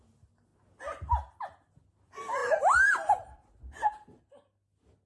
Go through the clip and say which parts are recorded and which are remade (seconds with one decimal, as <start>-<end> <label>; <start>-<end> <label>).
0.0-2.4 recorded; 2.4-4.2 remade; 4.2-5.1 recorded